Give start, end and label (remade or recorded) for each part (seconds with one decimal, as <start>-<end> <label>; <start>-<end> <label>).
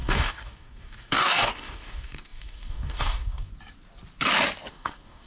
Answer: 0.0-3.5 remade; 3.5-4.7 recorded; 4.7-5.3 remade